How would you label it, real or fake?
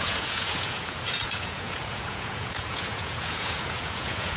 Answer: fake